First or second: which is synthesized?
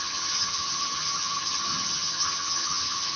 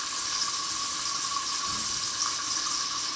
first